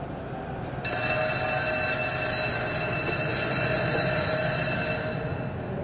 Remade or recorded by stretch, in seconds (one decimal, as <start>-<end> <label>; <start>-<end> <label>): 0.0-3.3 recorded; 3.3-4.3 remade; 4.3-5.8 recorded